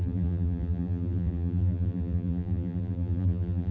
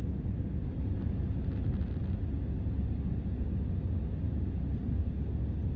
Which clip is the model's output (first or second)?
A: first